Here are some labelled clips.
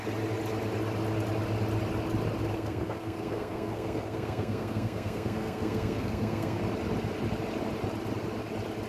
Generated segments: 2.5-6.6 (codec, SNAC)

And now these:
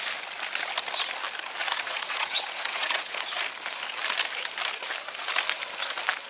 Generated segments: 1.6-3.4 (vocoder, Vocos)

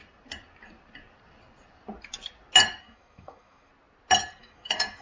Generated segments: 2.8-3.7 (autoencoder, DAC-VAE); 4.4-5.0

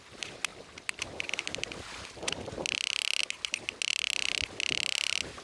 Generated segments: none

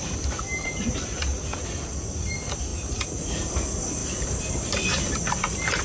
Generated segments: 4.0-5.8 (vocoder, BigVGAN v2)

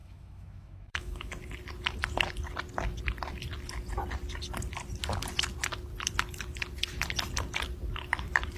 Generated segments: 0.0-1.3 (autoencoder, DAC-VAE)